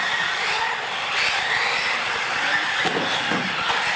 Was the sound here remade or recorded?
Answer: recorded